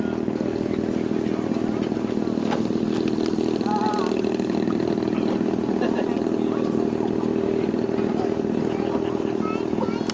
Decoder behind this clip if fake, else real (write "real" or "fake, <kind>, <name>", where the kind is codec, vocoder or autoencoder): real